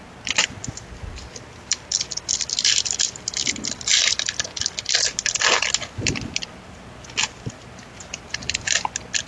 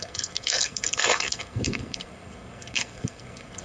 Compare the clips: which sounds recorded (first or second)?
first